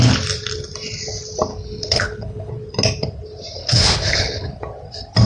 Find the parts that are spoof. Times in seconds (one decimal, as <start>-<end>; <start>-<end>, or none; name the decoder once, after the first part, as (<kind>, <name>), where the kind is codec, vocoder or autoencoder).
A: 1.5-2.5 (codec, HILCodec); 3.6-4.6